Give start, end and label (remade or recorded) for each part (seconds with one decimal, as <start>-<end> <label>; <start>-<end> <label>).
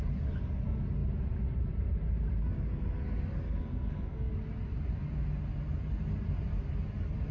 0.0-3.6 recorded; 3.6-4.3 remade; 4.3-7.3 recorded